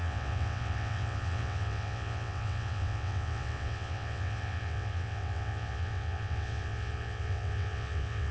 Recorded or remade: remade